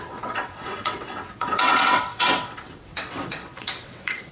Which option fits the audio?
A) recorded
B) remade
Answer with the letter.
B